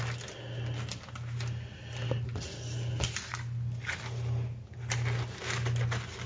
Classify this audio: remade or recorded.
recorded